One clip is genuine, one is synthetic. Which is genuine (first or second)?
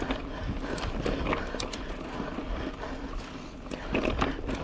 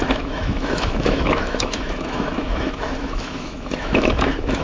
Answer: first